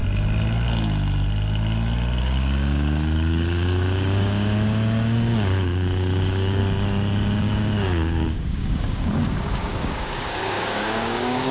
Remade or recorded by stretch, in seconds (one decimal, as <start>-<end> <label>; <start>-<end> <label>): 0.0-2.2 recorded; 2.2-6.6 remade; 6.6-7.4 recorded; 7.4-11.5 remade